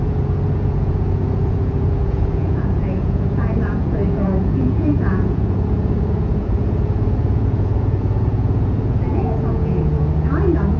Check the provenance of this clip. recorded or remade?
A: remade